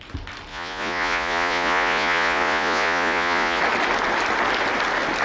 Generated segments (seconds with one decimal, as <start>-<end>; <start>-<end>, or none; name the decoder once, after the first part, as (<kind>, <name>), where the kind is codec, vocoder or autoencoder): 0.5-3.6 (vocoder, Vocos)

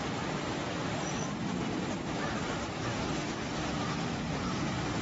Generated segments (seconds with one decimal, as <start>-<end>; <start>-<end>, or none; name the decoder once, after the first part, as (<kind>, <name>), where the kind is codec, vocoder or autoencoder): 0.8-2.8 (vocoder, BigVGAN v2)